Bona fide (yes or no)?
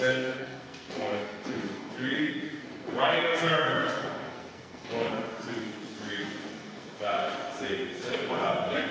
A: no